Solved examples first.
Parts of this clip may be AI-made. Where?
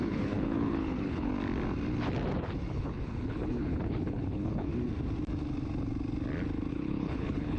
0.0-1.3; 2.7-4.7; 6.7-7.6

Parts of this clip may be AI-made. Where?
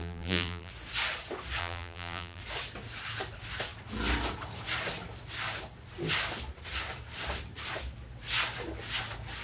0.0-0.7; 1.6-2.4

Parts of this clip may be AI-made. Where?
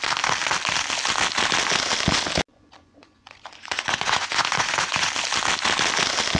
2.5-5.1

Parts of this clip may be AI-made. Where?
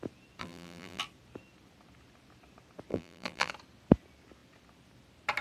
0.4-1.0; 2.9-3.5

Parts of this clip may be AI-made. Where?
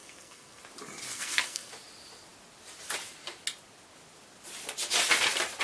0.0-0.6; 1.1-1.7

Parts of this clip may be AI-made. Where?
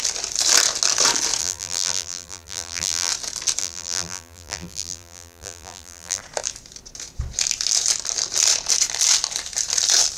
1.4-3.1; 3.6-6.2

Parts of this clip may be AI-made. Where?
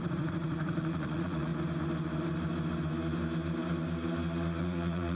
0.0-1.5; 4.6-5.1